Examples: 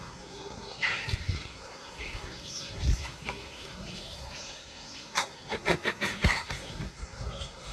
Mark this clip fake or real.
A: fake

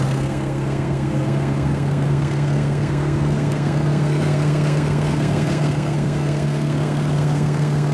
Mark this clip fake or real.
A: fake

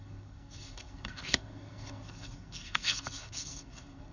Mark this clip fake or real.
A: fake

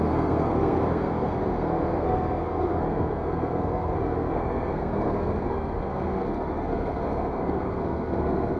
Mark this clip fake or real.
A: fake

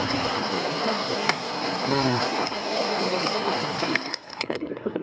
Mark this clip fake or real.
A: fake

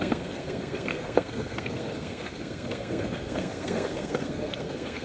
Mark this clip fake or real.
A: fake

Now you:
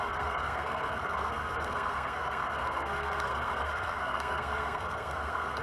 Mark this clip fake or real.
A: fake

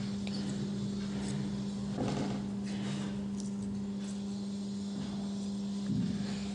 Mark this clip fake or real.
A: real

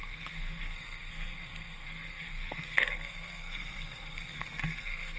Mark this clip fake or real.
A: fake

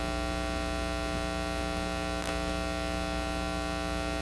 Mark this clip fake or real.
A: real